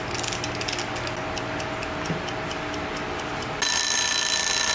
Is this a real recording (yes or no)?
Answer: yes